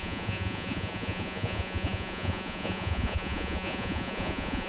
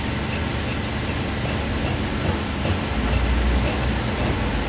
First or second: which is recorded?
second